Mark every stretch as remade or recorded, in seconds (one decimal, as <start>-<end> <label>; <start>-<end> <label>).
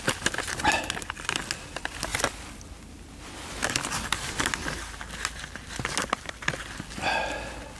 0.0-7.8 recorded